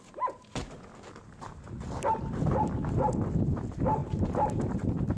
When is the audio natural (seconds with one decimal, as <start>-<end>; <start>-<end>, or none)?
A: 0.0-5.2